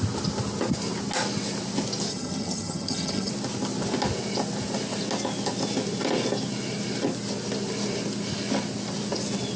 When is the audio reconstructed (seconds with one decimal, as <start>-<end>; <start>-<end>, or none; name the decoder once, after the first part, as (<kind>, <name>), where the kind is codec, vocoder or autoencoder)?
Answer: 2.1-3.3 (vocoder, HiFi-GAN)